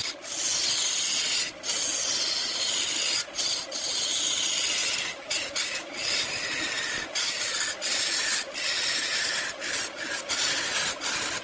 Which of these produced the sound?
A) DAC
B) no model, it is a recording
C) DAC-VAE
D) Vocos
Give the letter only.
B